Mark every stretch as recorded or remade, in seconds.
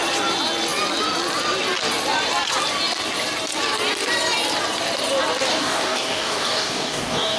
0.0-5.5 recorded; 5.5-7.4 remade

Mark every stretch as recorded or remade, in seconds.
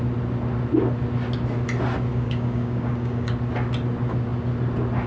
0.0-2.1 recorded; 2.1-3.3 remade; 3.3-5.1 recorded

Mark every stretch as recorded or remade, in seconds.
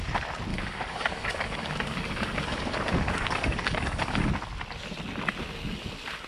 0.0-0.5 recorded; 0.5-4.3 remade; 4.3-6.3 recorded